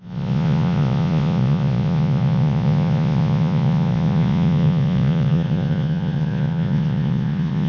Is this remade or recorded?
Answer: remade